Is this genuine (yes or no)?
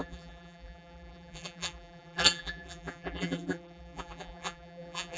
no